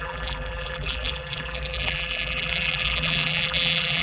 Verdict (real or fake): fake